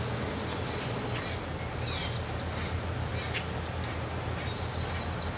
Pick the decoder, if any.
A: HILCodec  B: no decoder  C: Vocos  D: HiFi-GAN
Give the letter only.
B